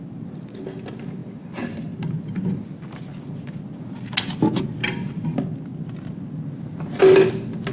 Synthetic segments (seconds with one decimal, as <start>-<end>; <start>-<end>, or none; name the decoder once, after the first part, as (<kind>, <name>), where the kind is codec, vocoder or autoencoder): none